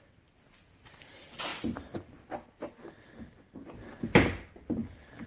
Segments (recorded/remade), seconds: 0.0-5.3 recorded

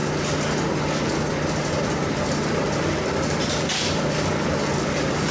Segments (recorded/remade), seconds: 0.0-2.1 recorded; 2.1-5.3 remade

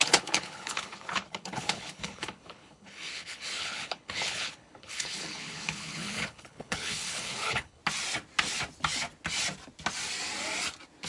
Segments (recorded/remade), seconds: 0.0-7.8 remade; 7.8-11.1 recorded

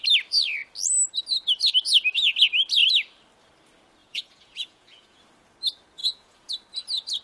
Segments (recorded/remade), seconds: 0.0-4.0 recorded; 4.0-5.2 remade; 5.2-6.0 recorded; 6.0-6.5 remade; 6.5-7.2 recorded

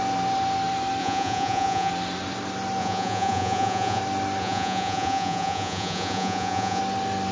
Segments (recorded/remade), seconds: 0.0-1.0 recorded; 1.0-1.9 remade; 1.9-2.8 recorded; 2.8-4.0 remade; 4.0-4.4 recorded; 4.4-6.8 remade; 6.8-7.3 recorded

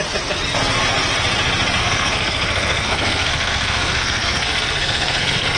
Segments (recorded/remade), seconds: 0.0-1.8 recorded; 1.8-5.6 remade

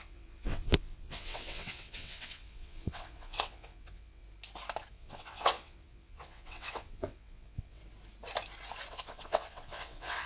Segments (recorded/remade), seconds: 0.0-4.2 remade; 4.2-4.9 recorded; 4.9-7.8 remade; 7.8-8.9 recorded; 8.9-10.3 remade